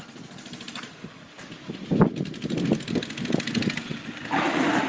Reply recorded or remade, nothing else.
recorded